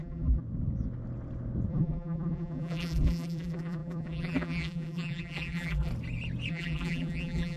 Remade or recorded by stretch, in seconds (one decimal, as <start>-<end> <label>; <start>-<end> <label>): 0.0-0.4 remade; 0.4-1.7 recorded; 1.7-5.9 remade; 5.9-6.5 recorded; 6.5-7.6 remade